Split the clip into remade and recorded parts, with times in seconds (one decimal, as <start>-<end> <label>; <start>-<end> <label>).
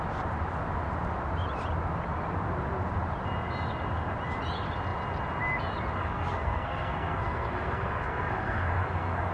0.0-6.0 recorded; 6.0-9.3 remade